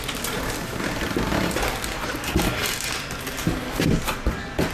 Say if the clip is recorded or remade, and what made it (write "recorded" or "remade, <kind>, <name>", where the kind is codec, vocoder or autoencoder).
recorded